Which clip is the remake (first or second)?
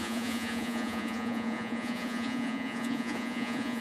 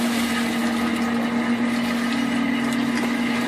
first